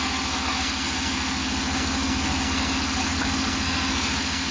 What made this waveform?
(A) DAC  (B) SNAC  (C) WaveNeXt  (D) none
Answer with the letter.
B